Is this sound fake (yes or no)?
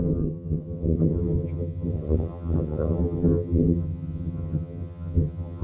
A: yes